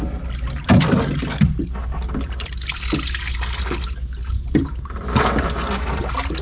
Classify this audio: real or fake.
real